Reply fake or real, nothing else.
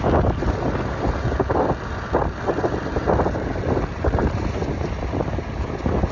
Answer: real